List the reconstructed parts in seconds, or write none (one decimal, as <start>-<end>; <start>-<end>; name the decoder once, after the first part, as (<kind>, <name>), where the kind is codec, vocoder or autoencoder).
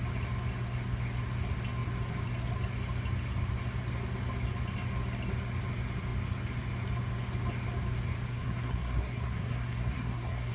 8.3-10.5 (codec, SNAC)